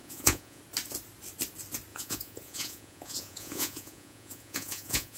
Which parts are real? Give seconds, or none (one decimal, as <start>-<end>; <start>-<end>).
0.6-1.9